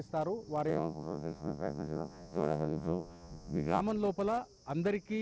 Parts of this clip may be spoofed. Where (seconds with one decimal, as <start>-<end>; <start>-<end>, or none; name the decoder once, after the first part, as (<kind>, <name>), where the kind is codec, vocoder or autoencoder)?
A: 0.7-3.8 (vocoder, Vocos)